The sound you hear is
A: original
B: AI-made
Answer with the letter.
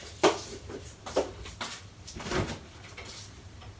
A